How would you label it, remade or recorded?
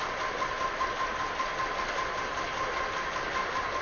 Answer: recorded